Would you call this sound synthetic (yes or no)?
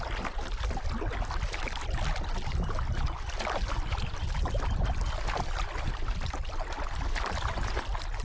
no